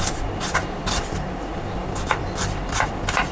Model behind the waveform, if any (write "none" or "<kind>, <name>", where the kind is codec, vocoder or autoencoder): vocoder, BigVGAN v2